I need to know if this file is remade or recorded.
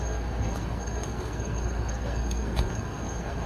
remade